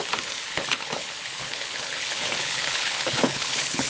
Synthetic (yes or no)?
yes